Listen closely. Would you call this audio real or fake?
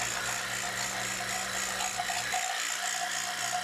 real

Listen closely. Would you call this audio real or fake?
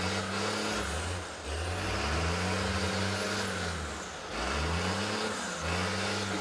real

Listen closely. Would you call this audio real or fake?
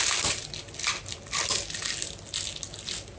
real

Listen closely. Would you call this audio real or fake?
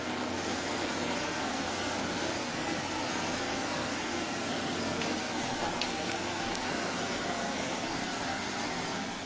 fake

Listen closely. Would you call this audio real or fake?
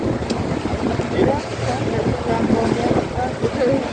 real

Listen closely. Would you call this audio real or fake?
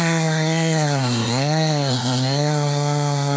fake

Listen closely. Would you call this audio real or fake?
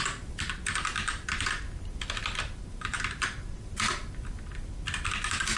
real